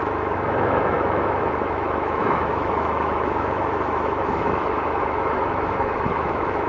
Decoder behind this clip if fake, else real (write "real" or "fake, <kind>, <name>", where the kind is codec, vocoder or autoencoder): fake, autoencoder, DAC-VAE